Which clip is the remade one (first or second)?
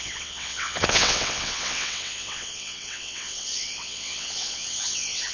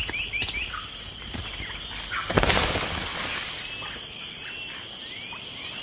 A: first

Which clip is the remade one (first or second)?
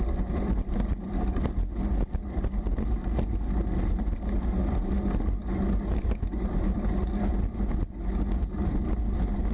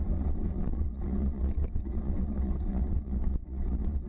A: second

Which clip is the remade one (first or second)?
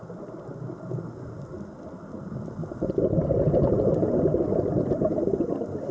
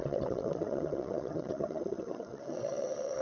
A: second